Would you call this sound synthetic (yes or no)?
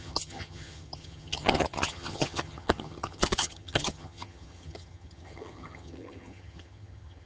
yes